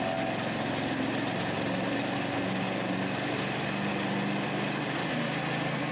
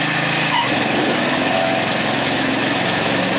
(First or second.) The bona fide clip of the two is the first